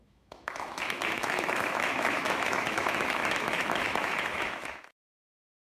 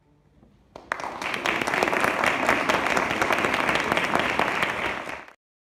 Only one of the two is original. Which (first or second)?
second